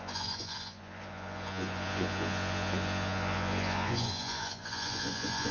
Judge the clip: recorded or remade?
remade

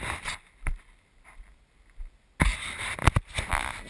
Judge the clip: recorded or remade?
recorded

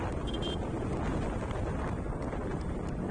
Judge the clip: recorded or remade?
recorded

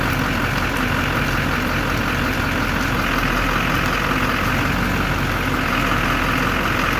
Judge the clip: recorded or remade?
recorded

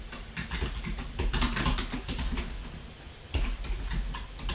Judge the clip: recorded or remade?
recorded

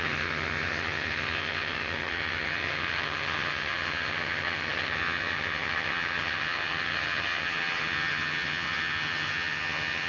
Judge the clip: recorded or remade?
remade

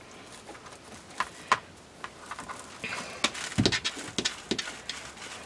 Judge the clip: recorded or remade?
recorded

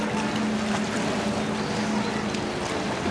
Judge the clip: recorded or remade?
recorded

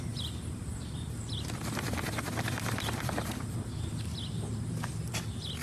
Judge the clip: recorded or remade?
remade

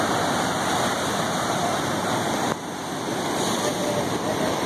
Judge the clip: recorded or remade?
recorded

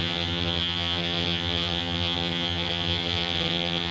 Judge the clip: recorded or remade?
remade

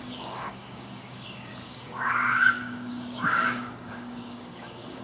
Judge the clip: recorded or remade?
remade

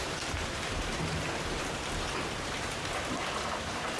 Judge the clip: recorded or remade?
remade